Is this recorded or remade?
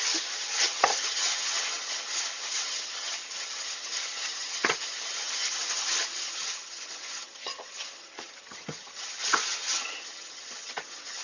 remade